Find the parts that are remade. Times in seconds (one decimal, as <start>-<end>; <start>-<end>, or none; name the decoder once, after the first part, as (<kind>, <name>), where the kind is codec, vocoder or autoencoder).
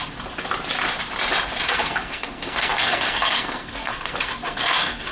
1.6-5.1 (codec, SNAC)